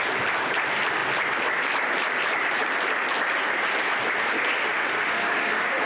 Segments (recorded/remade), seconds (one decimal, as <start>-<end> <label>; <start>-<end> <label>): 0.0-4.6 recorded; 4.6-5.9 remade